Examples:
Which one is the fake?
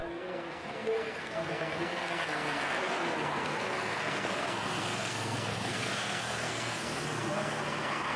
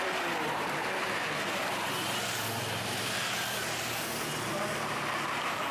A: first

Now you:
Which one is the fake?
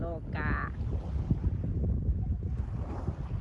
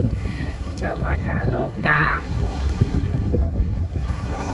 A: second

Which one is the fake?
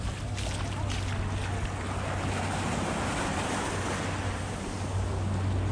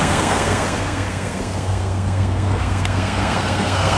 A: second